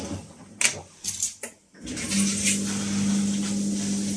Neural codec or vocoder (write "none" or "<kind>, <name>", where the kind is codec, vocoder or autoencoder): none